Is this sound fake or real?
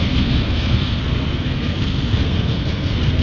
fake